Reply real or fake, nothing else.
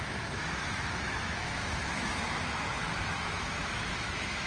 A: fake